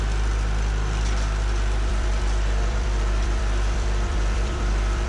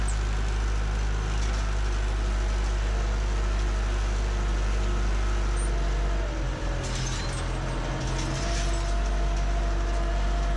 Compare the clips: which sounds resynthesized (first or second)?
first